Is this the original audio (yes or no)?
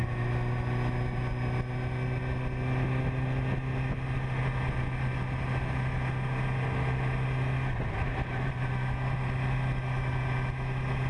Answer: yes